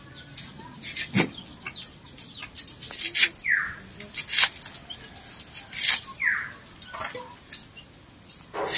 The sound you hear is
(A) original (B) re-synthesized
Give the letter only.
A